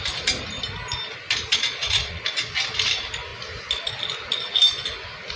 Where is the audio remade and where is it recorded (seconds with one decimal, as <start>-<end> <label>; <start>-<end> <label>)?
0.0-1.5 recorded; 1.5-2.2 remade; 2.2-5.4 recorded